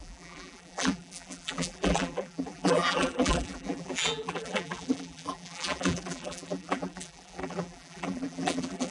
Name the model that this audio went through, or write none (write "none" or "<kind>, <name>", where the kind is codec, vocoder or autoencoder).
vocoder, BigVGAN v2